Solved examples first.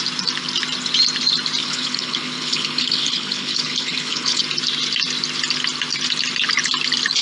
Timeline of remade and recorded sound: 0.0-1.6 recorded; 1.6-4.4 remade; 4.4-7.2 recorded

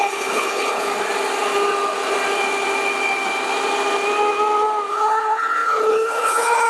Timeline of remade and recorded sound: 0.0-0.9 remade; 0.9-4.9 recorded; 4.9-6.7 remade

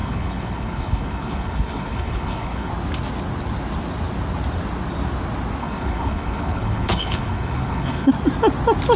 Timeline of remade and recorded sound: 0.0-2.7 remade; 2.7-5.6 recorded; 5.6-8.1 remade; 8.1-9.0 recorded

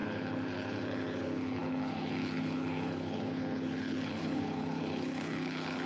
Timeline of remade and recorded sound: 0.0-5.9 remade

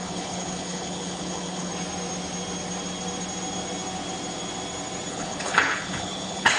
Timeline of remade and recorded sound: 0.0-1.7 remade; 1.7-5.1 recorded; 5.1-6.6 remade

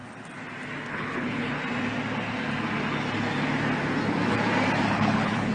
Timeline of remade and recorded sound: 0.0-0.9 recorded; 0.9-1.6 remade; 1.6-4.9 recorded; 4.9-5.5 remade

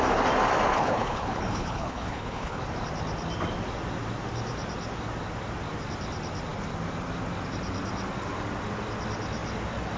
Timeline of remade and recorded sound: 0.0-0.7 recorded; 0.7-2.6 remade; 2.6-10.0 recorded

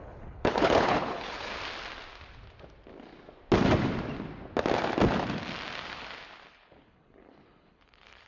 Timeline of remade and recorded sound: 0.0-1.5 remade; 1.5-6.5 recorded; 6.5-8.3 remade